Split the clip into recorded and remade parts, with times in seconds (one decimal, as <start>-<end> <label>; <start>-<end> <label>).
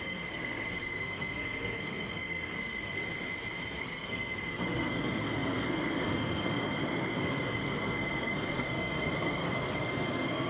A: 0.0-3.0 remade; 3.0-3.8 recorded; 3.8-10.5 remade